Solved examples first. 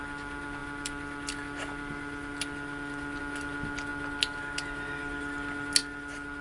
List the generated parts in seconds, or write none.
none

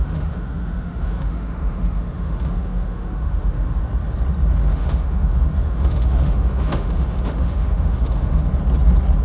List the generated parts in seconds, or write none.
0.0-3.8 (autoencoder, DAC-VAE); 4.7-8.5

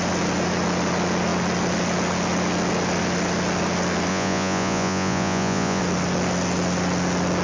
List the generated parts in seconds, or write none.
4.1-5.8 (vocoder, Vocos)

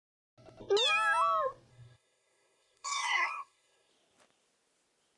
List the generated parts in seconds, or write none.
1.7-3.9 (codec, SNAC)